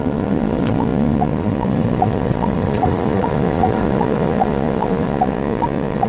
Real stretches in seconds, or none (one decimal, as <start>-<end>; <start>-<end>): none